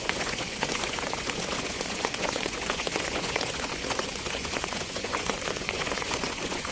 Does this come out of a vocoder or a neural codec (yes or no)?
yes